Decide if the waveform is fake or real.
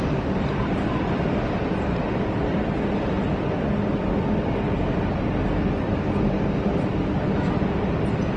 real